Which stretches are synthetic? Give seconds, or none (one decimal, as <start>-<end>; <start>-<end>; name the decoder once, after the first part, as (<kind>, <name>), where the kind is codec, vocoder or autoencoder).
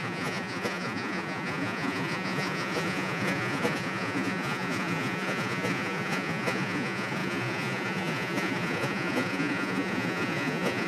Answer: 0.0-10.9 (vocoder, Vocos)